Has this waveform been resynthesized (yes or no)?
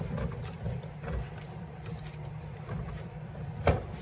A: yes